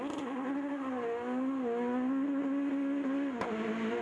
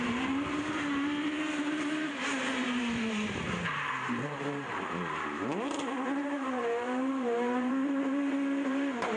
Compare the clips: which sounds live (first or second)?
first